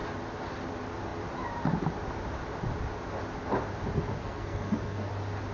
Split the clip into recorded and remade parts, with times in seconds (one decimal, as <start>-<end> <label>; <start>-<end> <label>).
0.0-4.2 recorded; 4.2-5.1 remade; 5.1-5.5 recorded